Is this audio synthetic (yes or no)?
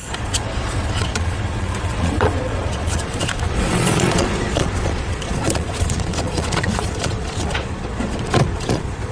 yes